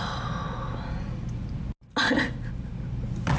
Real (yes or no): yes